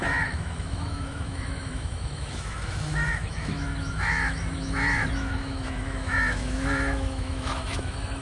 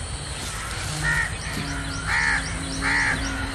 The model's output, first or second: first